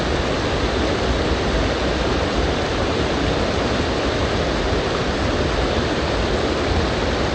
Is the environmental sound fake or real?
real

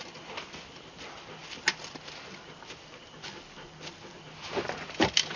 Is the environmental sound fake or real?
real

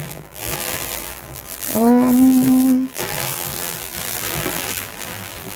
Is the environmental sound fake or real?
fake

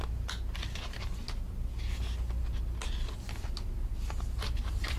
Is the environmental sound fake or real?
real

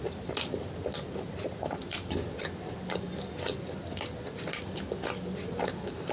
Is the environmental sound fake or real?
real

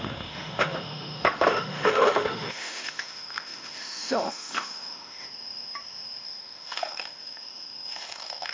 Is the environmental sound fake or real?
fake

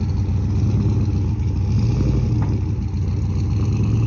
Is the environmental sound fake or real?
real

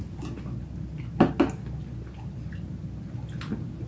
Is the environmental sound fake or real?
real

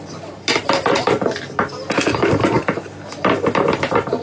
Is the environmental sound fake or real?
real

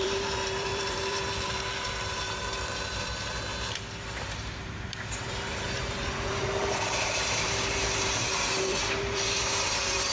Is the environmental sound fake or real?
fake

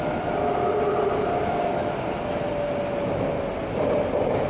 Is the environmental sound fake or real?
real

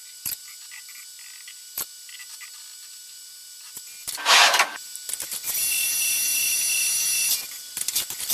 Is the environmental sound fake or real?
real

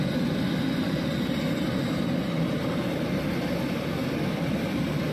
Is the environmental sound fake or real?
real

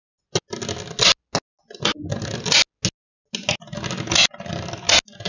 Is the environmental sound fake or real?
real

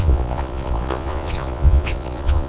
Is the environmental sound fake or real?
fake